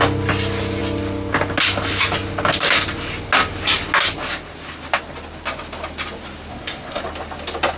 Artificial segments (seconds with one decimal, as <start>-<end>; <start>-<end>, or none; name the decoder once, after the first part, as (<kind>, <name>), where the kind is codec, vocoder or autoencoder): 6.5-7.0 (codec, SNAC)